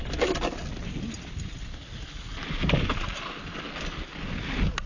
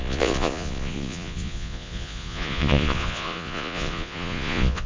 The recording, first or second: first